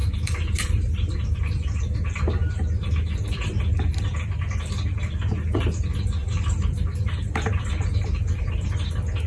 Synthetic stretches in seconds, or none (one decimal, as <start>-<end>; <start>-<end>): 0.0-1.4; 6.2-8.9